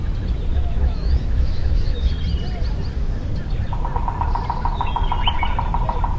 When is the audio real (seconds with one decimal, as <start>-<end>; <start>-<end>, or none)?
0.0-0.5; 2.1-6.2